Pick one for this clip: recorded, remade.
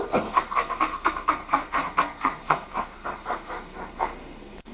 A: remade